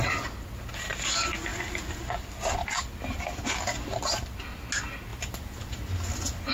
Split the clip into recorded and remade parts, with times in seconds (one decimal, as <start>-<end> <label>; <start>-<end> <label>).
0.0-6.5 recorded